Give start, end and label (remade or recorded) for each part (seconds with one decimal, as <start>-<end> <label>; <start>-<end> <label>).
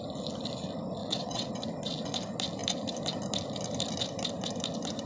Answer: 0.0-1.0 recorded; 1.0-1.5 remade; 1.5-5.1 recorded